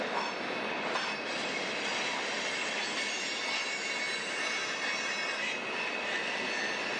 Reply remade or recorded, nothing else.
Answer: recorded